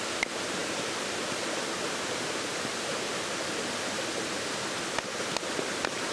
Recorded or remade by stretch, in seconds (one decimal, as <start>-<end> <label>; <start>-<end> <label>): 0.0-6.1 recorded